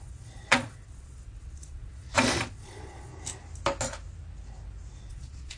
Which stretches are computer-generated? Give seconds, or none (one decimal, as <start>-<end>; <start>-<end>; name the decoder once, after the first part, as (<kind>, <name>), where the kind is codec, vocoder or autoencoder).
0.0-3.1 (vocoder, Vocos); 5.1-5.6